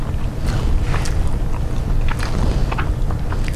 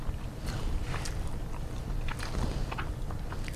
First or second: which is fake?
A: second